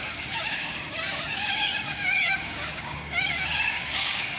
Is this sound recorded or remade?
remade